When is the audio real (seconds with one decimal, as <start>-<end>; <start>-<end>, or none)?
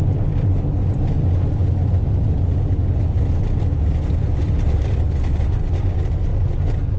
0.0-7.0